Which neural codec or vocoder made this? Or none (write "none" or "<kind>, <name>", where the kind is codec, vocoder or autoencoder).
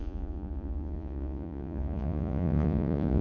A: vocoder, Vocos